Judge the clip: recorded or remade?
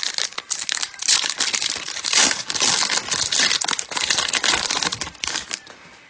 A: recorded